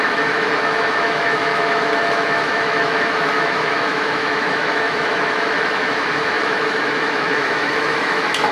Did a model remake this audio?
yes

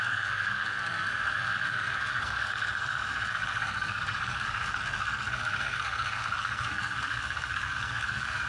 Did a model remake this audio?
yes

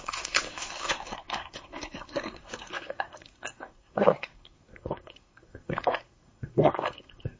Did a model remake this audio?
yes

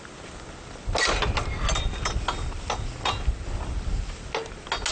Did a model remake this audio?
no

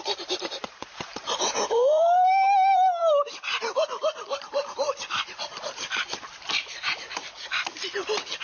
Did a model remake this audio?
yes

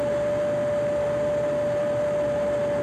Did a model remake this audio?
no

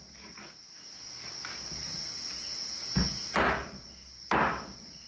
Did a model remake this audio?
no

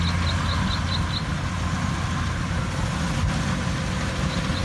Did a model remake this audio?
no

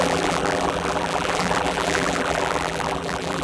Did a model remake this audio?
yes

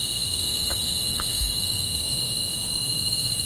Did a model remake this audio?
yes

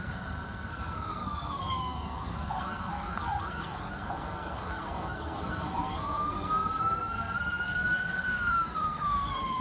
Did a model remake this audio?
yes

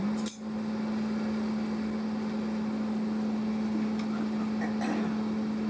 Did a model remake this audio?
no